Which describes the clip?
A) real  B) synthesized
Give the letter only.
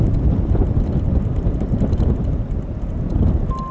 A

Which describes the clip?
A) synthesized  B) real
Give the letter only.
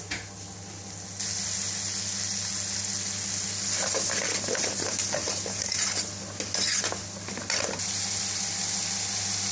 B